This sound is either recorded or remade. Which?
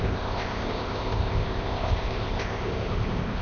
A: remade